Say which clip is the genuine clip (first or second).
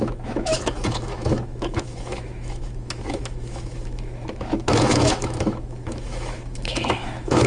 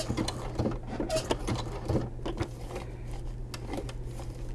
second